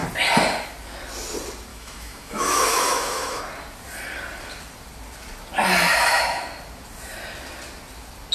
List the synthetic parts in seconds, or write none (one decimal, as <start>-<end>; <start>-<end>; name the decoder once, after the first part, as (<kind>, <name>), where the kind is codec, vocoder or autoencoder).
1.7-3.4 (autoencoder, DAC-VAE); 5.9-6.4